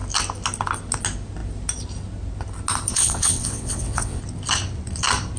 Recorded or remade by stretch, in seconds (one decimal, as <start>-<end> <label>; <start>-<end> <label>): 0.0-2.9 recorded; 2.9-4.2 remade; 4.2-5.4 recorded